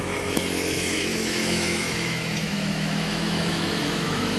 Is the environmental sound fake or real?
fake